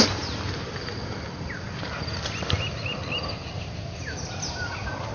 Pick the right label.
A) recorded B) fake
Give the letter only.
A